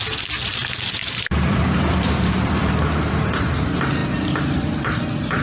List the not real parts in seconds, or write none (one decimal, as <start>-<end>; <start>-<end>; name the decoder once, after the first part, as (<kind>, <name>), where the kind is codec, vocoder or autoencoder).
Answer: 1.0-3.4 (vocoder, BigVGAN v2); 4.0-5.0